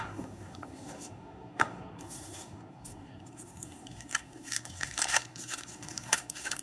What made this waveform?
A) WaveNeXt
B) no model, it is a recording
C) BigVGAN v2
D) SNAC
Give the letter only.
D